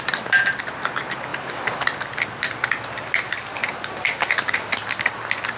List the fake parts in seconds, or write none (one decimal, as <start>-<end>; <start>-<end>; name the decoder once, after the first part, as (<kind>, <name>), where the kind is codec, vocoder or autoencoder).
none